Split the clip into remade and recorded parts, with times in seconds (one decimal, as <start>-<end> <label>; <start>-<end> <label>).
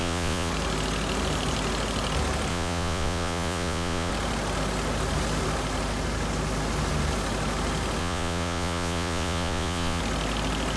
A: 0.0-0.5 remade; 0.5-2.5 recorded; 2.5-4.1 remade; 4.1-8.0 recorded; 8.0-10.0 remade; 10.0-10.8 recorded